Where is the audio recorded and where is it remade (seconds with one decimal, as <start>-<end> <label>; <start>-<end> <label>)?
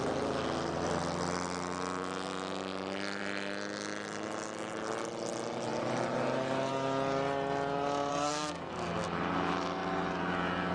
0.0-8.1 recorded; 8.1-8.7 remade; 8.7-10.7 recorded